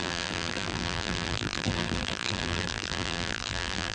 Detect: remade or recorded remade